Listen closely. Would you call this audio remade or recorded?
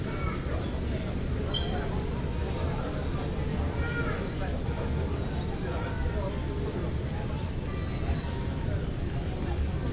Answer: recorded